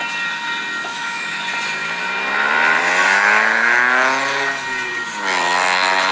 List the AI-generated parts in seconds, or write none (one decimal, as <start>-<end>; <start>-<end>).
0.9-1.4